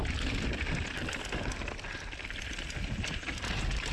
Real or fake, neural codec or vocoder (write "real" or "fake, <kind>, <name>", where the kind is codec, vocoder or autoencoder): real